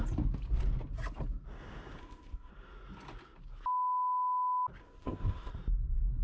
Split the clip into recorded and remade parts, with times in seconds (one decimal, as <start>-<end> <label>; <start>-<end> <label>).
0.0-2.0 recorded; 2.0-2.5 remade; 2.5-4.8 recorded; 4.8-5.5 remade; 5.5-6.2 recorded